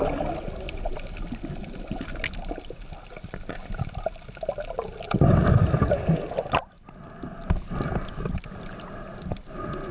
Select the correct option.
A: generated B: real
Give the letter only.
B